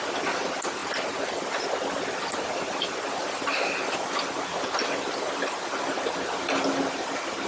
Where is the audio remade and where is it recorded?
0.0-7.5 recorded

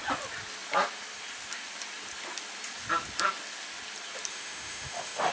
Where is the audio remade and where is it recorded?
0.0-4.3 recorded; 4.3-5.3 remade

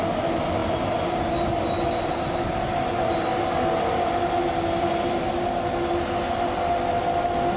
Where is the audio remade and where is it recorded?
0.0-7.6 recorded

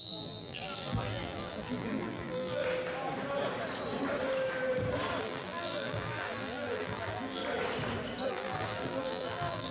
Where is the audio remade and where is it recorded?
0.0-2.6 remade; 2.6-5.2 recorded; 5.2-7.4 remade; 7.4-8.3 recorded; 8.3-9.7 remade